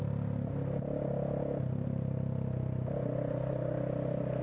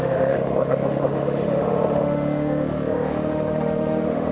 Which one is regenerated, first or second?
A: second